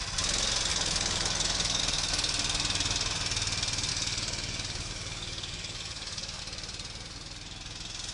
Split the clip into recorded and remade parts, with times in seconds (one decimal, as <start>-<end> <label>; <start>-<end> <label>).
0.0-0.7 recorded; 0.7-1.8 remade; 1.8-3.9 recorded; 3.9-6.4 remade; 6.4-8.1 recorded